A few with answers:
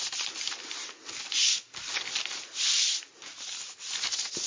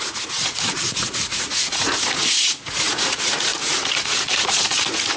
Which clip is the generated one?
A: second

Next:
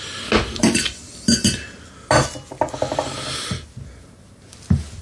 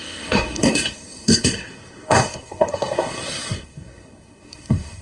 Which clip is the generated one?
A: second